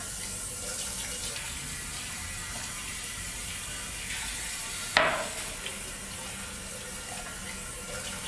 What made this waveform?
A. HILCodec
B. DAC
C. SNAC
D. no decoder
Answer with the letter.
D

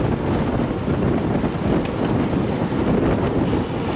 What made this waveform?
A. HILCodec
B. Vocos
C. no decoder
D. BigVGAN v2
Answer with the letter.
C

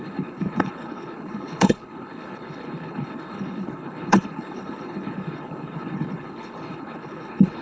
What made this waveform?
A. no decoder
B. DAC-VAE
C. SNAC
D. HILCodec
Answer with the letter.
D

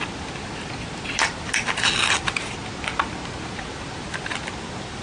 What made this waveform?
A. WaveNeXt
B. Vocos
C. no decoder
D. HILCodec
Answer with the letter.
C